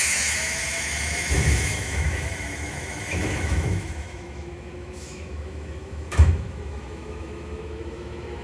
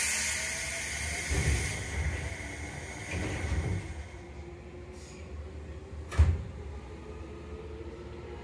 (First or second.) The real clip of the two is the second